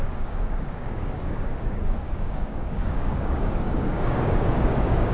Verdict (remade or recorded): remade